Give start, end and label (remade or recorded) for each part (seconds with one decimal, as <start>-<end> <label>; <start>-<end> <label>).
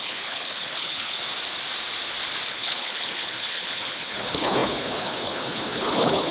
0.0-1.2 remade; 1.2-2.5 recorded; 2.5-6.3 remade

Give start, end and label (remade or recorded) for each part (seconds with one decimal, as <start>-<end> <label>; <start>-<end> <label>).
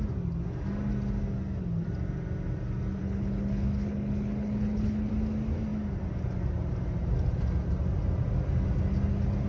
0.0-3.0 recorded; 3.0-5.1 remade; 5.1-9.5 recorded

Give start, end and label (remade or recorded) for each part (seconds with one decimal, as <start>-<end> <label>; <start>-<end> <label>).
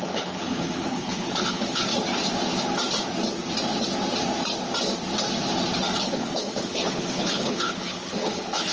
0.0-1.9 remade; 1.9-6.0 recorded; 6.0-8.7 remade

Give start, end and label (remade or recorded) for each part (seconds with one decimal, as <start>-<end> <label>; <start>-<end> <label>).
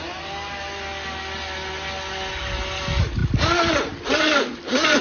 0.0-5.0 recorded